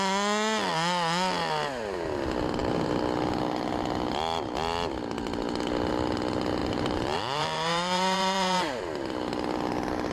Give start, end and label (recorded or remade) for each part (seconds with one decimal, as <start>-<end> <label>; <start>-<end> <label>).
0.0-6.6 recorded; 6.6-8.8 remade; 8.8-10.1 recorded